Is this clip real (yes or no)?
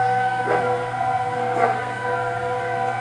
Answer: no